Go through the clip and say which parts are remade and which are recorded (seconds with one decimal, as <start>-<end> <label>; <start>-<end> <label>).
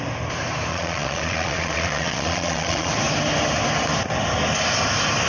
0.0-0.7 recorded; 0.7-2.9 remade; 2.9-5.3 recorded